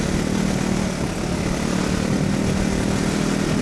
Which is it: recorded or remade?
recorded